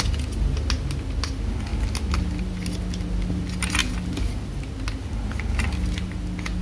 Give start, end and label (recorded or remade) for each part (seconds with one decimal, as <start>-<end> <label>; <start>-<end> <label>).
0.0-6.6 recorded